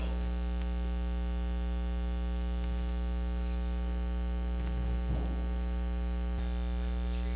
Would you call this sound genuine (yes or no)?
yes